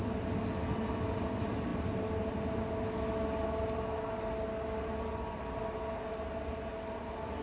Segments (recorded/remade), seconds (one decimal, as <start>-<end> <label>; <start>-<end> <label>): 0.0-7.4 recorded